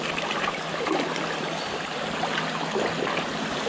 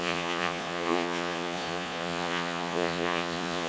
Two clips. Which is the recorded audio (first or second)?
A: first